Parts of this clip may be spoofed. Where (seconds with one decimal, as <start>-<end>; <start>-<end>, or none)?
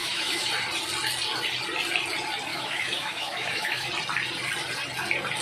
0.0-0.5; 2.5-3.9